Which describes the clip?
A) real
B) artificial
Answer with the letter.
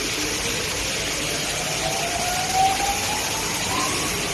A